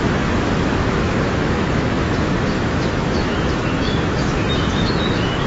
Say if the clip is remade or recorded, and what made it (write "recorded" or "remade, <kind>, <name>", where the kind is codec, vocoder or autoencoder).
remade, autoencoder, DAC-VAE